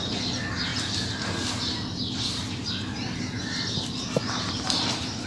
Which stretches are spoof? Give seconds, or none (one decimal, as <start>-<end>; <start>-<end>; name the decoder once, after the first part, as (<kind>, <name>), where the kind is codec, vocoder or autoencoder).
none